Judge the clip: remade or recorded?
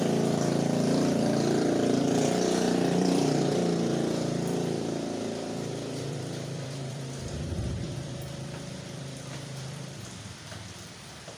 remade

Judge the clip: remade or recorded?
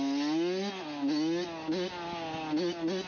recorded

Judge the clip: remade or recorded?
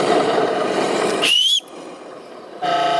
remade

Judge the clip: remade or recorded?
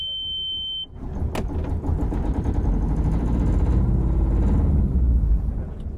recorded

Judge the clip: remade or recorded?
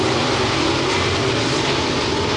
recorded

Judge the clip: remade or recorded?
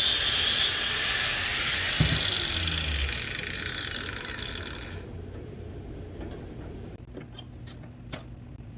recorded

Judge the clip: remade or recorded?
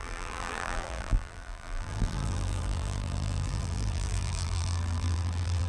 remade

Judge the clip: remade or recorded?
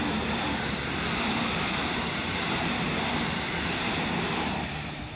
remade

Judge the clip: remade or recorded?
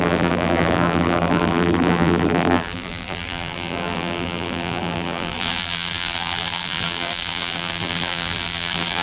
remade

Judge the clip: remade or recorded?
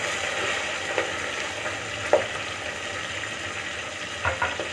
recorded